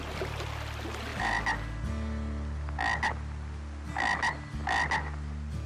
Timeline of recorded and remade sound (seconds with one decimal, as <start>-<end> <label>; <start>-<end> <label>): 0.0-5.7 recorded